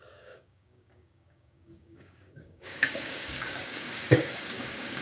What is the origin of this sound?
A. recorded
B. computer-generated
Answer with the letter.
B